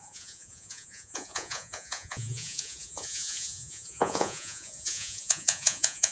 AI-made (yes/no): yes